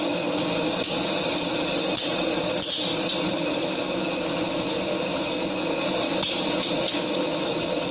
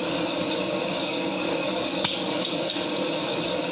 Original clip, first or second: first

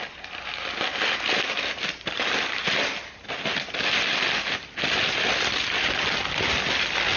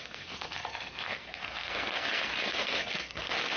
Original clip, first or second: first